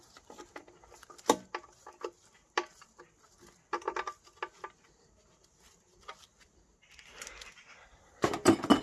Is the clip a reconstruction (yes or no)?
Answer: no